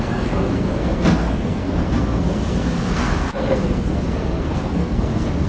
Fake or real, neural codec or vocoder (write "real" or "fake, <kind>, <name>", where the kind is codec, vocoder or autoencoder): fake, codec, SNAC